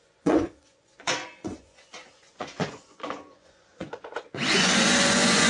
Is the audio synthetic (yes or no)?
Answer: yes